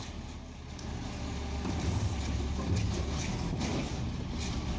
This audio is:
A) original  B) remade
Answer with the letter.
A